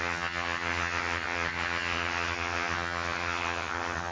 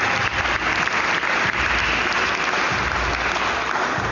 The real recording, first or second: second